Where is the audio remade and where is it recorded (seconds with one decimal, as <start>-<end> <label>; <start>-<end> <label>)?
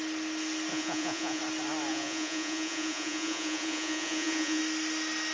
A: 0.0-0.7 recorded; 0.7-1.4 remade; 1.4-1.9 recorded; 1.9-4.6 remade; 4.6-5.3 recorded